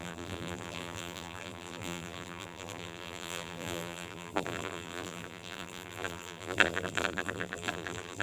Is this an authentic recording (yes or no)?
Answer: no